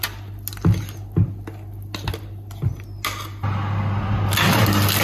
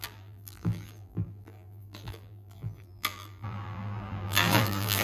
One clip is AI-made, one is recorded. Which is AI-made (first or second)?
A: second